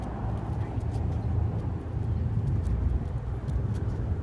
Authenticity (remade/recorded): recorded